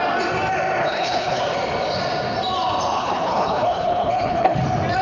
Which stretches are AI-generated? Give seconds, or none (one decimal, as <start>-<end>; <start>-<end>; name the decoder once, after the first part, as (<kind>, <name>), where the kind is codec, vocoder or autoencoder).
0.8-1.4 (codec, HILCodec); 3.0-4.6